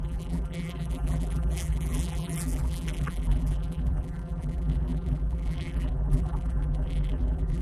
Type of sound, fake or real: fake